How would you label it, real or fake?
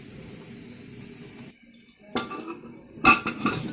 real